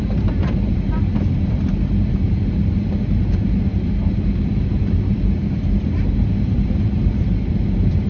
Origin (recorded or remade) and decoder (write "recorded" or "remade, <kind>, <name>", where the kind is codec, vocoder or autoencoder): remade, vocoder, BigVGAN v2